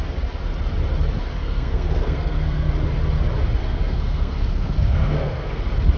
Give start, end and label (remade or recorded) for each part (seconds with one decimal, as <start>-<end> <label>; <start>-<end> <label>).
0.0-1.4 recorded; 1.4-2.7 remade; 2.7-3.6 recorded; 3.6-5.6 remade; 5.6-6.0 recorded